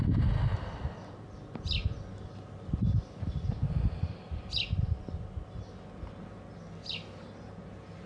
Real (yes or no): yes